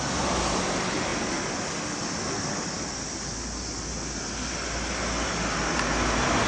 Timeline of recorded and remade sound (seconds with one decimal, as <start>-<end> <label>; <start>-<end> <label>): 0.0-6.5 recorded